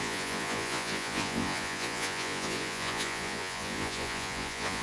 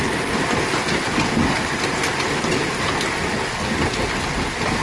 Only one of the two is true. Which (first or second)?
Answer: second